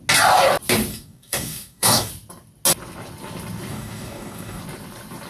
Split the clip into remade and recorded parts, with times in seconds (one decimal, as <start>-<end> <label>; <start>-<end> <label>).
0.0-0.9 recorded; 0.9-2.1 remade; 2.1-3.7 recorded; 3.7-4.6 remade; 4.6-5.3 recorded